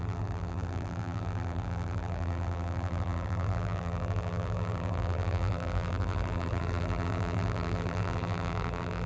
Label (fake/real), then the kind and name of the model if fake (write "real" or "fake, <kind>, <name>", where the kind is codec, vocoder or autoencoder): fake, vocoder, BigVGAN v2